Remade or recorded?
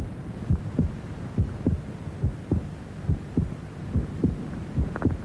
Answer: recorded